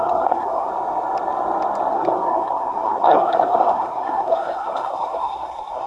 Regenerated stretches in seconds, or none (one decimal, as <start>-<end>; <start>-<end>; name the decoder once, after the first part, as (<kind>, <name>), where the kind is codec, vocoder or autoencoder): 0.0-0.7 (codec, SNAC); 1.9-5.9